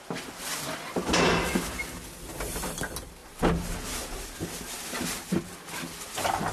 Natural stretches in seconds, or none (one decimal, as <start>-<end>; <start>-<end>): 0.0-6.5